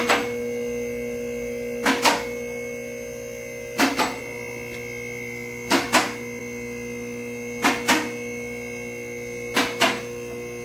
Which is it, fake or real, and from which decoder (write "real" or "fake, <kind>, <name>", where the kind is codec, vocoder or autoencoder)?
real